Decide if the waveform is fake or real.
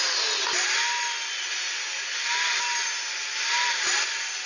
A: real